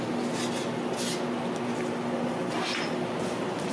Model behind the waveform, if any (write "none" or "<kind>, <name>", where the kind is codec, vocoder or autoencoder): none